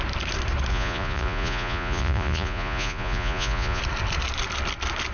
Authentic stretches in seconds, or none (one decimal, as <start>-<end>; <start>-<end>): 0.0-0.7; 3.8-5.1